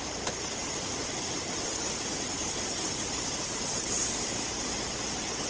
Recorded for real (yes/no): yes